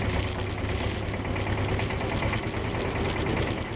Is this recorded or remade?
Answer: recorded